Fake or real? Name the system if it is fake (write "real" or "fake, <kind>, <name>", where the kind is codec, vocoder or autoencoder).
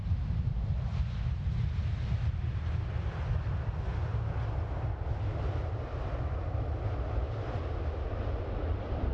real